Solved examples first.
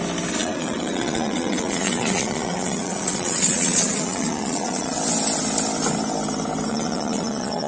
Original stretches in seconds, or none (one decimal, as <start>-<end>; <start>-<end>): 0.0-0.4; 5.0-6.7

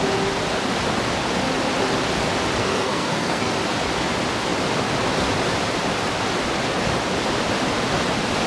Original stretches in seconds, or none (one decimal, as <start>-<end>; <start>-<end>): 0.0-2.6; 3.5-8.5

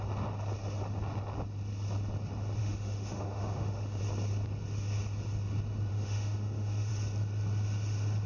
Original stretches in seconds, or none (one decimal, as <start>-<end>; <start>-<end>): 0.0-2.6; 4.0-5.9; 6.9-8.3

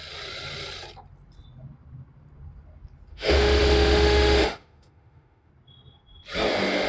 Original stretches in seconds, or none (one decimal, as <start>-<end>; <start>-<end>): 0.0-3.1; 5.5-6.9

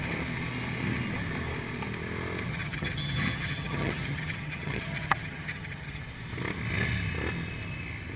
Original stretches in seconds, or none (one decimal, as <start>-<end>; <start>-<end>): 0.0-2.5; 6.0-8.2

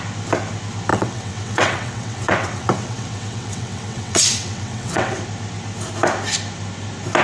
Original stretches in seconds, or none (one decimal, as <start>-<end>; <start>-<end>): 0.0-0.9; 5.2-7.2

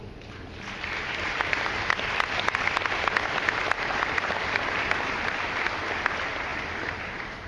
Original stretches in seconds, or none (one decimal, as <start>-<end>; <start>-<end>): none